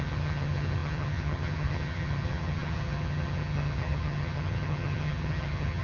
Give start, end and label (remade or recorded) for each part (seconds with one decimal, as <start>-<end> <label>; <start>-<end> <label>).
0.0-5.8 remade

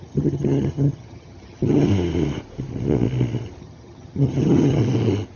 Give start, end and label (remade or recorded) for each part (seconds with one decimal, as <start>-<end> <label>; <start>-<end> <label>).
0.0-1.9 remade; 1.9-3.6 recorded; 3.6-4.8 remade; 4.8-5.4 recorded